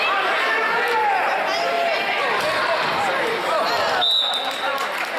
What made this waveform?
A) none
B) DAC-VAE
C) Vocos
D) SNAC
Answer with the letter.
A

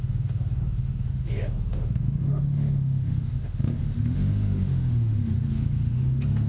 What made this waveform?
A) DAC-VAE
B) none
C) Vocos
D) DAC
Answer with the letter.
A